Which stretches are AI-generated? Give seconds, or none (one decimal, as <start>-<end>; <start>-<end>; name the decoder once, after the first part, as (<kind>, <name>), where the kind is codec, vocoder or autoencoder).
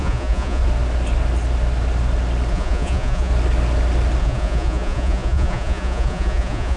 0.0-0.6 (vocoder, Vocos); 2.5-3.3; 4.2-6.8